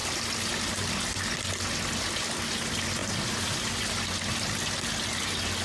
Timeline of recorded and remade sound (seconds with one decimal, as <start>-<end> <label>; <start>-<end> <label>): 0.0-5.6 recorded